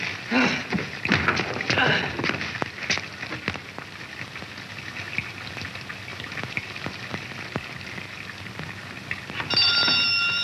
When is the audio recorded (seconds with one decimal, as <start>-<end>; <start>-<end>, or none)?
0.0-10.4